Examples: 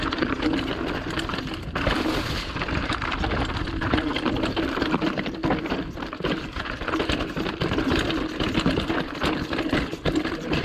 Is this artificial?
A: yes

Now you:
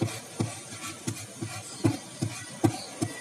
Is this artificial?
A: no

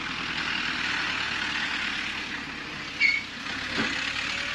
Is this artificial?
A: no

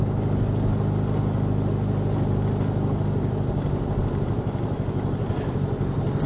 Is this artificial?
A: no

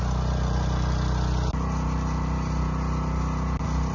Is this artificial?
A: no